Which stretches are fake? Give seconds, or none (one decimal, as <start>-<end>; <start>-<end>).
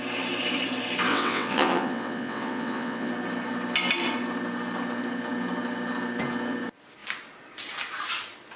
1.1-3.1